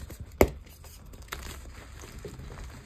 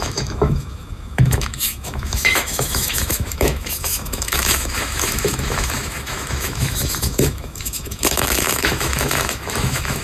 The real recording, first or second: first